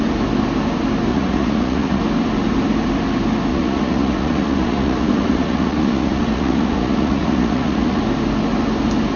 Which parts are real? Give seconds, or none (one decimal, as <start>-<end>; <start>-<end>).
0.0-1.1; 2.0-3.5; 8.0-9.2